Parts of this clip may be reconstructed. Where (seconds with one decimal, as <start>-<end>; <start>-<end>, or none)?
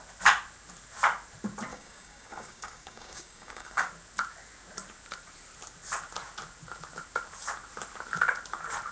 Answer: 1.7-3.9